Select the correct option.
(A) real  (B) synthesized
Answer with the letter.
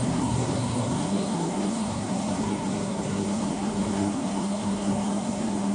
B